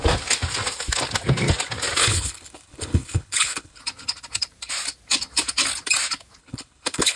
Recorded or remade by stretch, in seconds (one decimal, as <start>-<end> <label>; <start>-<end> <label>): 0.0-2.0 recorded; 2.0-3.8 remade; 3.8-6.4 recorded; 6.4-7.2 remade